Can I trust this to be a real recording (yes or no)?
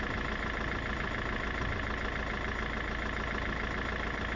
yes